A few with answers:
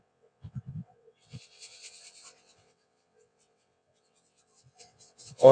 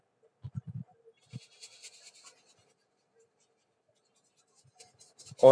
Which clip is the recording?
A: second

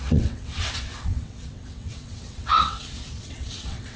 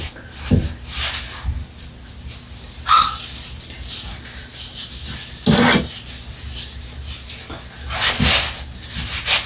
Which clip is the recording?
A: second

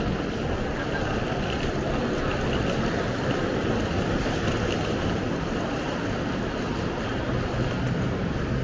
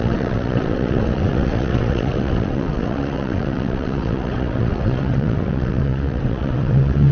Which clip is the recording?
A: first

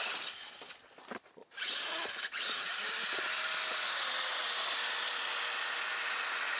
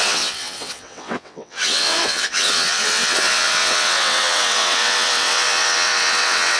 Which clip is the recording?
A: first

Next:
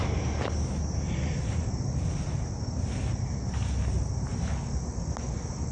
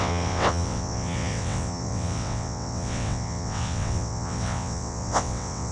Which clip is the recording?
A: first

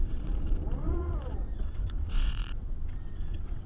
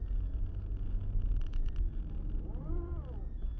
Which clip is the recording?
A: second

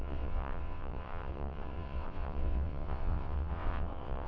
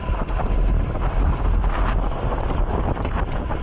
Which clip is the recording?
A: second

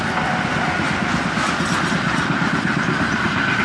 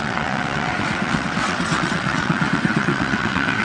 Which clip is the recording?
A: first